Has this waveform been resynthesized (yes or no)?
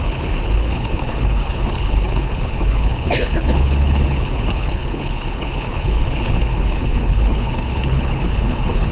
yes